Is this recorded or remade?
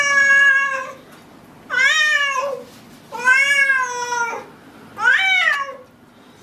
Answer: recorded